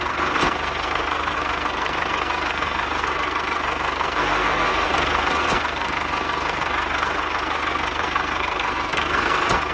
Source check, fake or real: fake